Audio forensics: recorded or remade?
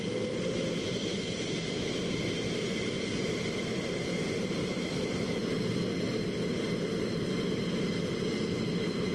recorded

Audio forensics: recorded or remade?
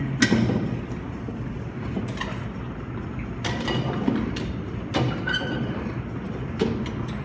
recorded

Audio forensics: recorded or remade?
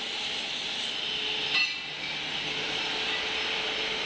recorded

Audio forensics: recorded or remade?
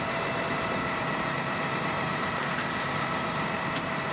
remade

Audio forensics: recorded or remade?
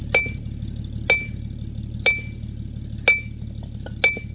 recorded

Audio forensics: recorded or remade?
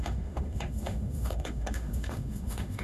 remade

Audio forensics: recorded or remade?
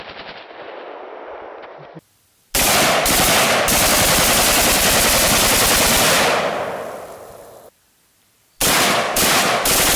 recorded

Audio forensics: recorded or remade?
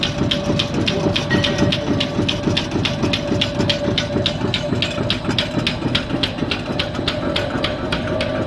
recorded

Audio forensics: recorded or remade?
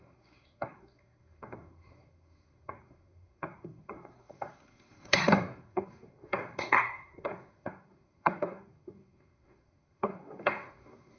remade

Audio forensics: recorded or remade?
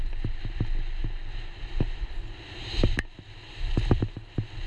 recorded